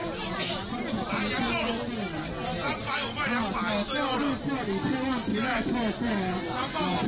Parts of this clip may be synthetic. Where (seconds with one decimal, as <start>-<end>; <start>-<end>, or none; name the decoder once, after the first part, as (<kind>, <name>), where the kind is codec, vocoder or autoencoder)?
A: 0.0-0.7 (vocoder, Vocos); 5.3-7.1

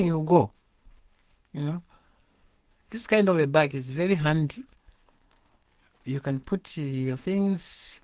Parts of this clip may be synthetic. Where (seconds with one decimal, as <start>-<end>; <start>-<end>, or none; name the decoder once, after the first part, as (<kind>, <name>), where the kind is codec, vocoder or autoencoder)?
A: 0.0-5.7 (codec, SNAC); 6.3-8.0

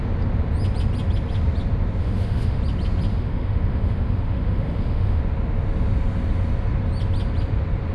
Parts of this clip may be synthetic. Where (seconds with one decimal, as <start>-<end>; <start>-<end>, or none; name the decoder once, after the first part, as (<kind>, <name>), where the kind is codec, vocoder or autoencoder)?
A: 2.0-2.6 (autoencoder, DAC-VAE); 3.1-5.2

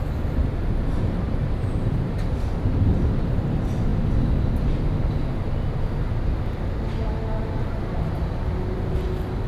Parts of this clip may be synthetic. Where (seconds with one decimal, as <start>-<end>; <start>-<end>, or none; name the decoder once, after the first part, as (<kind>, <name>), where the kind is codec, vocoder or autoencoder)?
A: 0.4-2.4 (vocoder, BigVGAN v2)

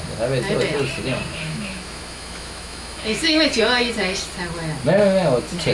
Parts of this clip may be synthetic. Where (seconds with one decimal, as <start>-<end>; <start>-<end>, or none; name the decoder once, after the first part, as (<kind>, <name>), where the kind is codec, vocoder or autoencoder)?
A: 1.3-3.6 (autoencoder, DAC-VAE)

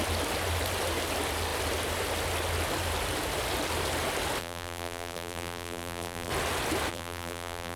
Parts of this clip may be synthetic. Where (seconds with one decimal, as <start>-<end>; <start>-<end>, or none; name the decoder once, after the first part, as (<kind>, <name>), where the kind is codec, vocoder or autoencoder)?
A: 4.4-6.3 (vocoder, BigVGAN v2); 6.9-7.8

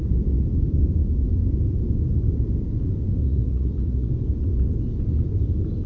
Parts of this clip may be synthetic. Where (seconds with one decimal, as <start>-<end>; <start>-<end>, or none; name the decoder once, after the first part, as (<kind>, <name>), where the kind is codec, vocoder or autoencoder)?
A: 3.2-4.1 (vocoder, Vocos)

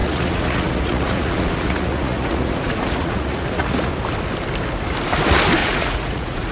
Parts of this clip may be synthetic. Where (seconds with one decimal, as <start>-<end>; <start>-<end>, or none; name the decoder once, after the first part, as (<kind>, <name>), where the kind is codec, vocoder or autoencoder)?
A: 0.0-3.9 (vocoder, Vocos); 5.6-6.5